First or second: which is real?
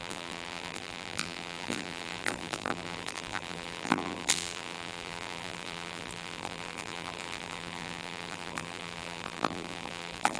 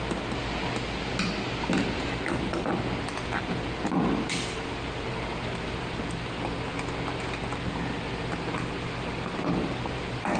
second